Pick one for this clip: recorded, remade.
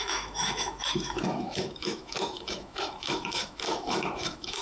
remade